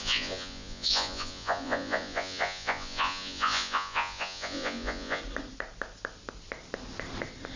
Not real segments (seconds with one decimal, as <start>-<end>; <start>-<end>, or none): 0.0-5.2